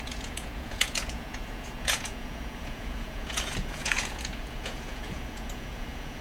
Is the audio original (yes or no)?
no